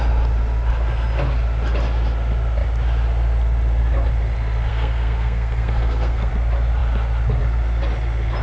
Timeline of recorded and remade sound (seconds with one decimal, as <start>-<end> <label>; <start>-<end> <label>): 0.0-4.7 recorded; 4.7-6.3 remade; 6.3-8.4 recorded